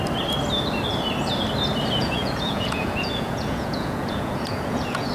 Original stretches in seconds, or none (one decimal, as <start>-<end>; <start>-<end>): 0.0-2.0